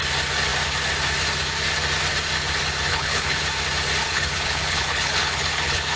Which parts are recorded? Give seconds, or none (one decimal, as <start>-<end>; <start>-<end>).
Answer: 0.0-2.9; 3.4-4.0